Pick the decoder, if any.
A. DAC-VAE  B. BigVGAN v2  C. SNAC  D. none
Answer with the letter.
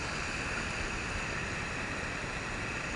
D